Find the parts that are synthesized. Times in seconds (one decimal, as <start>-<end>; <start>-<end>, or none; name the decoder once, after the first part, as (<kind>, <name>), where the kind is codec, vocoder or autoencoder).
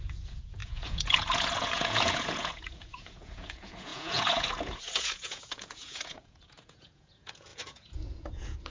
0.0-8.7 (vocoder, Vocos)